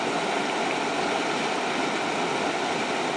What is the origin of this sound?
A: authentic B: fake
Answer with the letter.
A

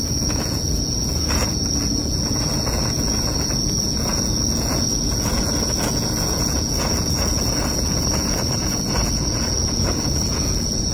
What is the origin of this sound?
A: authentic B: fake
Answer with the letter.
B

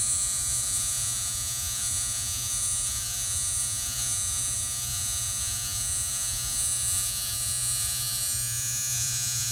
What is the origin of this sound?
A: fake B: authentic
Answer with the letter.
A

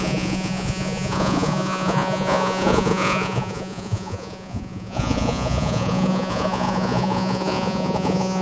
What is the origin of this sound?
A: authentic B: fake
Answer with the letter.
B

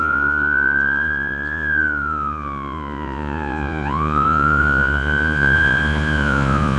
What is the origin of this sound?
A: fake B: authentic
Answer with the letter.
A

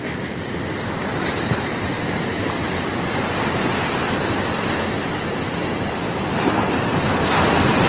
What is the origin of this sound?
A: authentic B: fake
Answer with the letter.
A